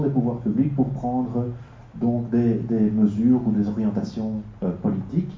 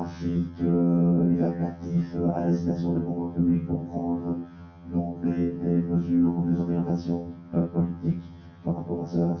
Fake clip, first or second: second